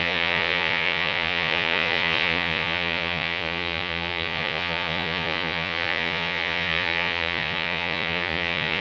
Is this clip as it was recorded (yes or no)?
no